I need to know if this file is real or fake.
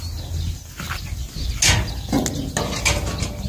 real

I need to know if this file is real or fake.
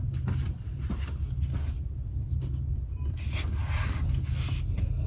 real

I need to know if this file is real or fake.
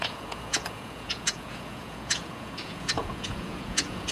fake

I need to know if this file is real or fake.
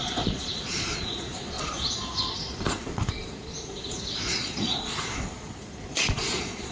fake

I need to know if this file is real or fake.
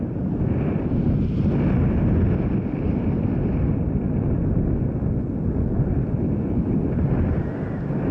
real